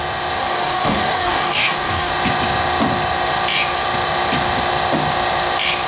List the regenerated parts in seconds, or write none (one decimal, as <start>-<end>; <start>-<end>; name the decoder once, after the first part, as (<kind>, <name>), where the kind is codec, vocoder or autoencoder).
0.4-2.1 (codec, DAC)